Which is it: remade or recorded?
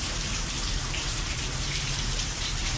remade